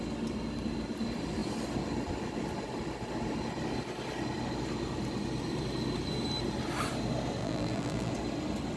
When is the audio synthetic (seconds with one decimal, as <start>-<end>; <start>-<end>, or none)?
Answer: 7.4-8.1